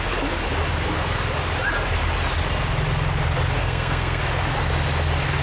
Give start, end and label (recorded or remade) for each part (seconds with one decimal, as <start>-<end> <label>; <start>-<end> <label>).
0.0-3.6 recorded; 3.6-4.2 remade; 4.2-5.4 recorded